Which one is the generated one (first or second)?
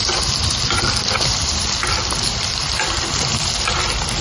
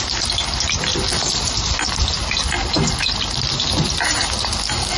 first